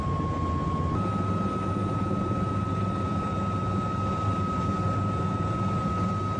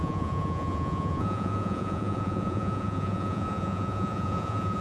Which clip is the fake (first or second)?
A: second